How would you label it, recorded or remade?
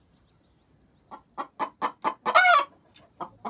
recorded